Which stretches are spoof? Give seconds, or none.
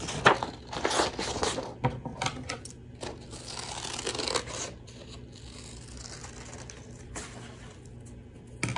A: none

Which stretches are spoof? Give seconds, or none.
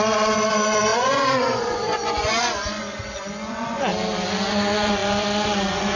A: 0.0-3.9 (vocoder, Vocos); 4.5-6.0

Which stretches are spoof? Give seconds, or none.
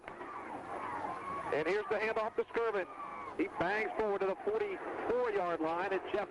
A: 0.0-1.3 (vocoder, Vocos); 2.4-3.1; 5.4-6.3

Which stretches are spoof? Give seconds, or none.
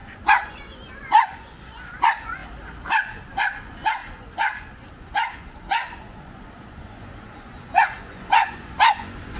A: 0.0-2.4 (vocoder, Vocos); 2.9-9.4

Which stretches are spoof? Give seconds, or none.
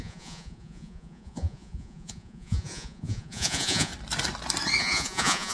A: 0.0-3.9 (vocoder, Vocos); 4.8-5.5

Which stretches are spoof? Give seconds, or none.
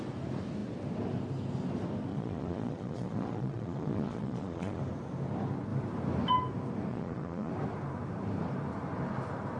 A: 2.1-4.8 (vocoder, Vocos); 6.9-7.5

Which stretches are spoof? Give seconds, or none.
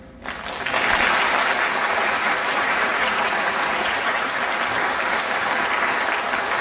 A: 1.8-4.3 (vocoder, Vocos)